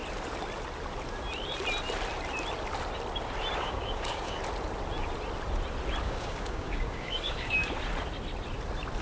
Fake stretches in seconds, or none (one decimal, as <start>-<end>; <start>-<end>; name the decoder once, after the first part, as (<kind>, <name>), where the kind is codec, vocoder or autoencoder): 3.6-4.4 (codec, DAC); 6.0-7.6